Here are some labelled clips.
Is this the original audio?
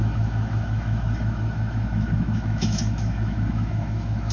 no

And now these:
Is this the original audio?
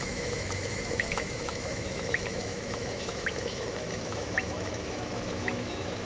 no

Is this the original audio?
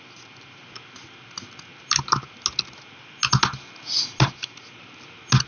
yes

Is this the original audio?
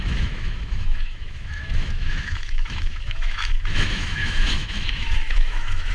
no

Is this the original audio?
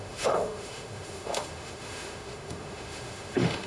no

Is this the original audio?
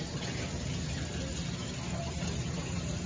yes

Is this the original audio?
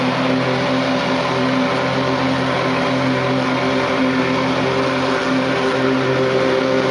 yes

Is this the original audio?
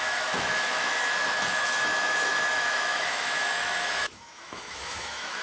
no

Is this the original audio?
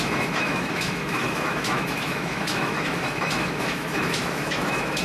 no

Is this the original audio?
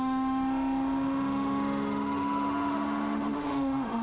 no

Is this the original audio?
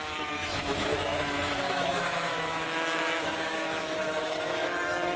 no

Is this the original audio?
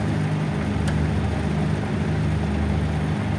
yes